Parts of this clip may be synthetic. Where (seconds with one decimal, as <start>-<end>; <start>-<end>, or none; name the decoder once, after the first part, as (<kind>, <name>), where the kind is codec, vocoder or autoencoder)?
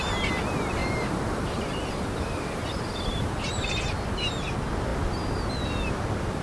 0.8-3.8 (vocoder, BigVGAN v2)